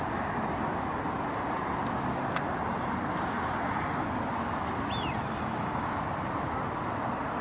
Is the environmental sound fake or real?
real